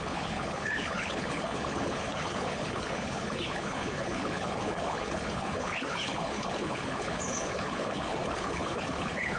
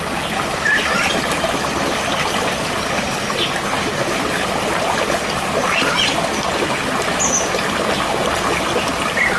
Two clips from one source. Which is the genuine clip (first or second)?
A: second